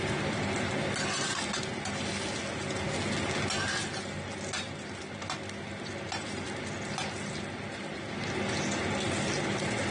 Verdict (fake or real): real